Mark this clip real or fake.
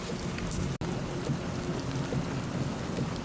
real